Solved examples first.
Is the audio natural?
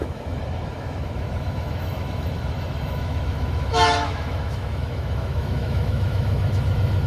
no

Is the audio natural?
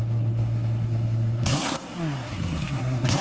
no